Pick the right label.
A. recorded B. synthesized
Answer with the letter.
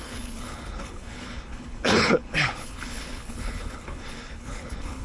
B